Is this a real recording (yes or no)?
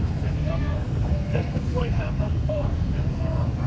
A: no